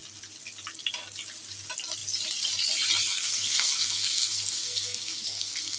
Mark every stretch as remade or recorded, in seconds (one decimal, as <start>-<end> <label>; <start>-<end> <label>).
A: 0.0-3.1 recorded; 3.1-5.8 remade